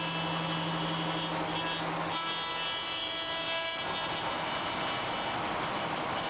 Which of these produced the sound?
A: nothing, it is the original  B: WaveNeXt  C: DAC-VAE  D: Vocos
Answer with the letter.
A